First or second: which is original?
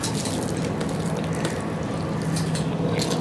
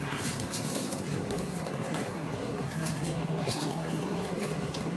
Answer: first